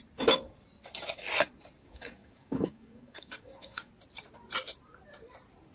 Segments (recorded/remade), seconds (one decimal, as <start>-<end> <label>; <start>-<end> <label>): 0.0-1.8 recorded; 1.8-3.9 remade; 3.9-5.7 recorded